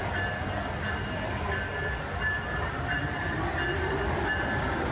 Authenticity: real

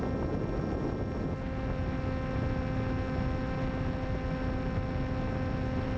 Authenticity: real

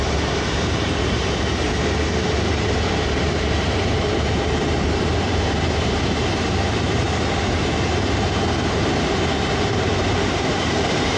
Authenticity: fake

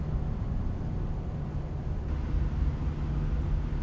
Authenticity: real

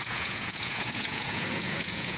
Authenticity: fake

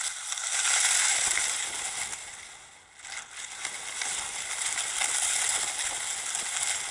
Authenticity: real